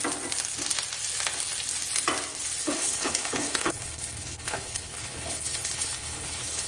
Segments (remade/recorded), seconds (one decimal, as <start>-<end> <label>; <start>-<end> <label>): 0.0-2.6 recorded; 2.6-6.7 remade